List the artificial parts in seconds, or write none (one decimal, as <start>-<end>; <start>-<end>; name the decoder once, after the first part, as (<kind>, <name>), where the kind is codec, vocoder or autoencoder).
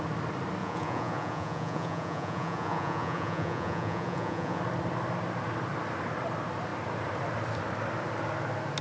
0.6-4.6 (vocoder, Vocos)